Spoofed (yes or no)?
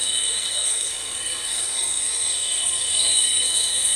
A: yes